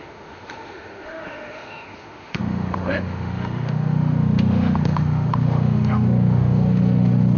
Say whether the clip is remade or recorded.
remade